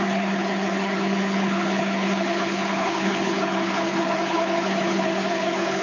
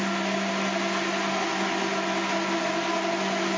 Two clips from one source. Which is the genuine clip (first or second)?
second